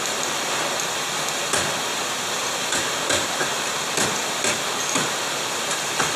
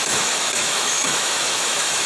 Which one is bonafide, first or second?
first